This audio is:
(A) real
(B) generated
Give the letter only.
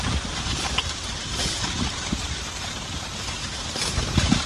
B